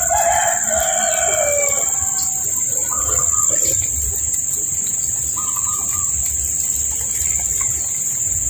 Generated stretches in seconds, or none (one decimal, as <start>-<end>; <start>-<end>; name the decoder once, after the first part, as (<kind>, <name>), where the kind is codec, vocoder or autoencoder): none